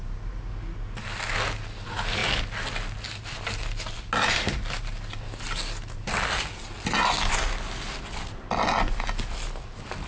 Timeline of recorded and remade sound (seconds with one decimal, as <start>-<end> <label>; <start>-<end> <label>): 0.0-10.1 recorded